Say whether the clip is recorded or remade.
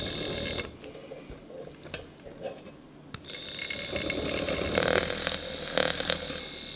recorded